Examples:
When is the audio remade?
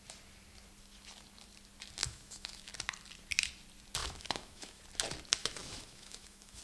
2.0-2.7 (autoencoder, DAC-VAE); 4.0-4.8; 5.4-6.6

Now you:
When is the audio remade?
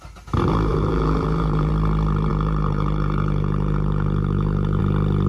0.7-1.7 (vocoder, BigVGAN v2); 2.3-4.8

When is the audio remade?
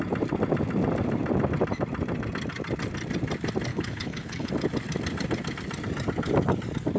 3.7-4.5 (codec, HILCodec)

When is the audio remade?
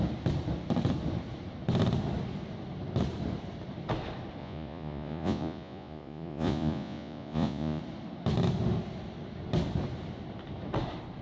4.4-7.8 (vocoder, Vocos)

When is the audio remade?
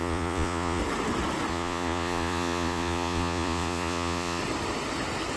0.0-0.8 (vocoder, Vocos); 1.5-4.4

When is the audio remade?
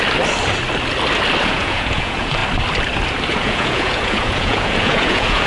1.4-2.4 (vocoder, Vocos); 3.3-5.5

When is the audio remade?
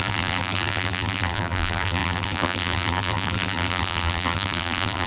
0.0-5.1 (vocoder, BigVGAN v2)